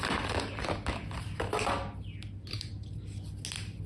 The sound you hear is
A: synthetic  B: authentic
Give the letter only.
B